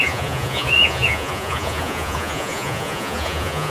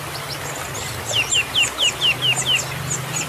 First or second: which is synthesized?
first